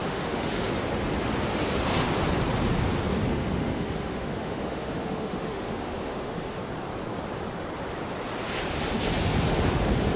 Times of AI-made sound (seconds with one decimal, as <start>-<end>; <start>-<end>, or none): 0.0-0.7; 3.3-6.6